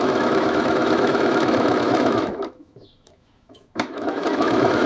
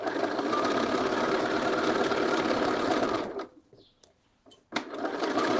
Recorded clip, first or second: second